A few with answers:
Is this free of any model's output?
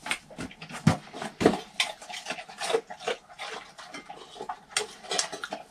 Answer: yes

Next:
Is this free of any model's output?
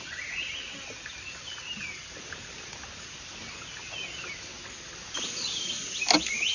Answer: yes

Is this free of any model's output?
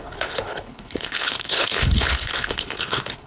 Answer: no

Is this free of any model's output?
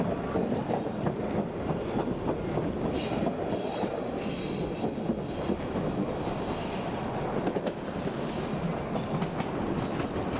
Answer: yes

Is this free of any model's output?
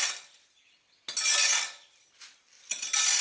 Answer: yes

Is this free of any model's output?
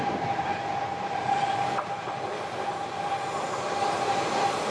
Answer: yes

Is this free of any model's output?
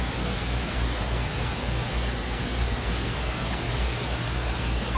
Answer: no